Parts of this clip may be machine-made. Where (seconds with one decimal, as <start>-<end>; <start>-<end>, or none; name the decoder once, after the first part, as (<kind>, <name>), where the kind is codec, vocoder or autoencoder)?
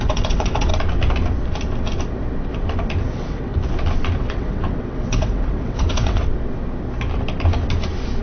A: 0.0-0.7 (vocoder, WaveNeXt); 3.0-3.5; 4.2-6.2